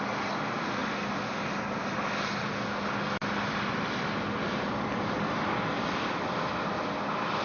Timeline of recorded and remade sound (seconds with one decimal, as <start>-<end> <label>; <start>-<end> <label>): 0.0-7.4 recorded